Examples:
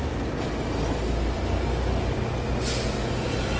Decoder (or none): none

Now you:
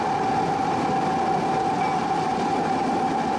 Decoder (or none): none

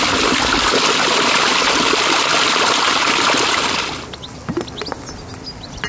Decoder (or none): none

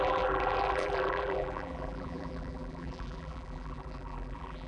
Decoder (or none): vocoder, BigVGAN v2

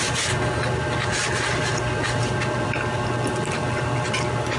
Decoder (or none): none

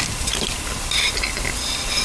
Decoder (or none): none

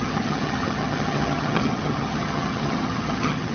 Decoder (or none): vocoder, HiFi-GAN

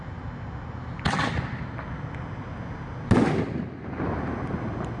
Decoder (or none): none